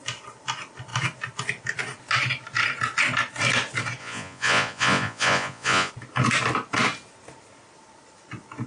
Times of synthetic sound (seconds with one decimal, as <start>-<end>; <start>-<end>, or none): 4.0-5.9